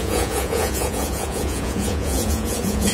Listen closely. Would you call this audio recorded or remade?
remade